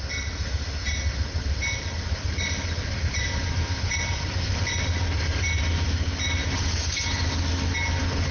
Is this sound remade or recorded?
recorded